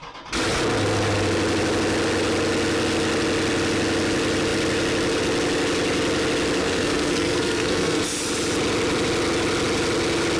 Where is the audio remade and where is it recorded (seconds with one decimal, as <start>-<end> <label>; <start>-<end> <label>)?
0.0-6.6 recorded; 6.6-8.0 remade; 8.0-10.4 recorded